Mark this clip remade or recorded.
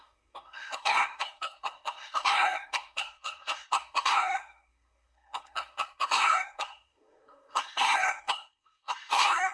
remade